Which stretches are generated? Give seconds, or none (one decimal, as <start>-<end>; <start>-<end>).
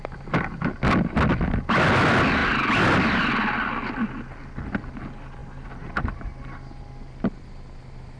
none